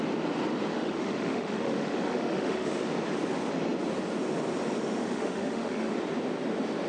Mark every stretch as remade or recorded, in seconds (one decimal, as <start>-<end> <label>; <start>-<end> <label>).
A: 0.0-0.7 recorded; 0.7-2.7 remade; 2.7-5.0 recorded; 5.0-5.9 remade; 5.9-6.9 recorded